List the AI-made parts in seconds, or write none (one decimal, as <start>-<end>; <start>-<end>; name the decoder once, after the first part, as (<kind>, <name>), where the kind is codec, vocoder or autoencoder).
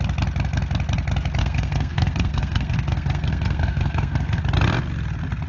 1.4-4.4 (codec, SNAC)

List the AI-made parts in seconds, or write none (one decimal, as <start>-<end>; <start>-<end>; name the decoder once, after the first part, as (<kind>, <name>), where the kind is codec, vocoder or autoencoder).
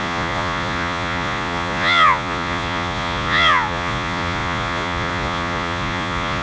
0.0-6.4 (vocoder, Vocos)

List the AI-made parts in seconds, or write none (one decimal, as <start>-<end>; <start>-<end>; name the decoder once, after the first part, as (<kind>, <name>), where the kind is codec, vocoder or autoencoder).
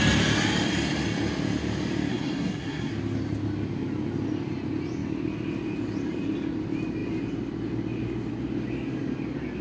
2.1-2.9 (codec, SNAC)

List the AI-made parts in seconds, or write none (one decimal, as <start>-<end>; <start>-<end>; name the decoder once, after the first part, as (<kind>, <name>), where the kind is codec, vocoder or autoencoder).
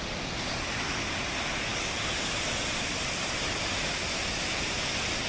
1.7-3.7 (vocoder, BigVGAN v2)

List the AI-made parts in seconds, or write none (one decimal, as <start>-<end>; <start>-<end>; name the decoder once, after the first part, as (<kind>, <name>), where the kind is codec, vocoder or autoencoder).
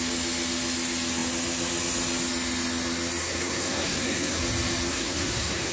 3.2-4.4 (codec, SNAC); 4.9-5.7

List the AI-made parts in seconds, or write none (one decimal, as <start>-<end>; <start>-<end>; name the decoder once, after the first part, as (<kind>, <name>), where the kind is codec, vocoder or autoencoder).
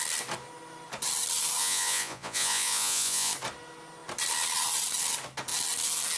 1.6-3.3 (vocoder, Vocos)